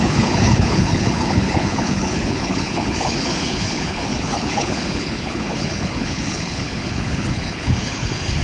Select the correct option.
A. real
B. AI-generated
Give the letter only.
B